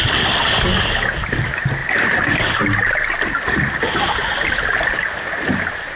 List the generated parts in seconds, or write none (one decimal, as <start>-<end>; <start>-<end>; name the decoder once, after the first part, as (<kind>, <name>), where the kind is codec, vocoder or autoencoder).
none